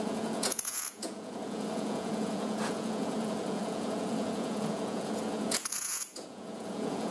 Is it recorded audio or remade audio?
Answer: remade